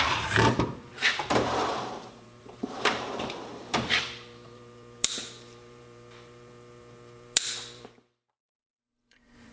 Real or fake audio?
fake